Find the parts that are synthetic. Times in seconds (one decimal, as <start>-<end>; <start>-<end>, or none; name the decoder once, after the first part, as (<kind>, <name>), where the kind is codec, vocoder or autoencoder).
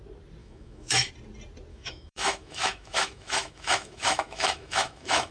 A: 0.4-1.1 (autoencoder, DAC-VAE); 1.7-5.3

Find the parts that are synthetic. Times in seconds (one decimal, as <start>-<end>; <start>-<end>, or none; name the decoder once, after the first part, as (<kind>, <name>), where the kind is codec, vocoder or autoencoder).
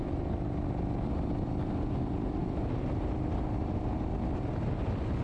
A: none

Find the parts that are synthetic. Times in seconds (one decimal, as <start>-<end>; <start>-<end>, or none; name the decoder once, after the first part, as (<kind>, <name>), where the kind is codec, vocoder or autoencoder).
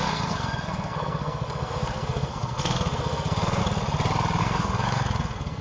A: 0.0-3.6 (codec, SNAC); 4.4-5.6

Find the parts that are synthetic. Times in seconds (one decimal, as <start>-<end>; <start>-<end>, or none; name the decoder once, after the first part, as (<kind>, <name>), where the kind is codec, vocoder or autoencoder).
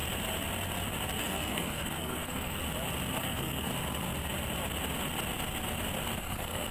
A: 1.2-2.6 (codec, SNAC); 3.2-3.7; 6.2-6.7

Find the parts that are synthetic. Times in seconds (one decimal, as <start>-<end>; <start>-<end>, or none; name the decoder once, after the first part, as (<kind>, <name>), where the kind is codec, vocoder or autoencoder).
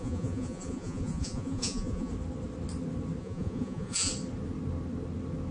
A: 0.0-2.1 (vocoder, Vocos); 3.2-4.1